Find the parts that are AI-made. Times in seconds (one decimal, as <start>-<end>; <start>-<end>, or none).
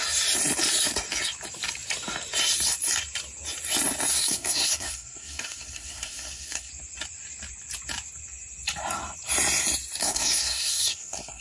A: 4.1-6.7; 10.0-11.4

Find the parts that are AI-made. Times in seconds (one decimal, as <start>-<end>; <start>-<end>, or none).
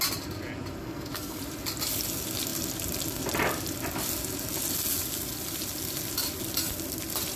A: 0.8-1.4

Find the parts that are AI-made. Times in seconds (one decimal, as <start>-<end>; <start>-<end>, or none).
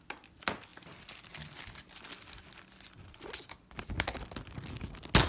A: none